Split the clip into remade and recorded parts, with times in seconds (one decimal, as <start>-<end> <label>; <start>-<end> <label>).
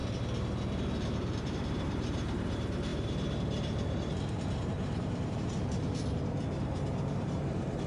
0.0-1.4 recorded; 1.4-7.9 remade